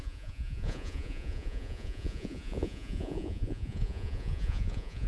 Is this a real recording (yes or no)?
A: no